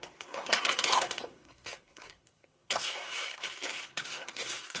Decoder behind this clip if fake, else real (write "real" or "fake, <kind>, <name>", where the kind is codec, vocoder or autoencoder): fake, codec, SNAC